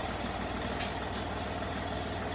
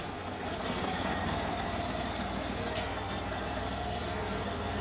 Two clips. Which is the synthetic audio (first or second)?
second